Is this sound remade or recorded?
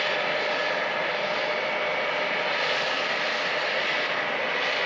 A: recorded